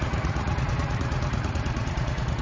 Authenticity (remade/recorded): remade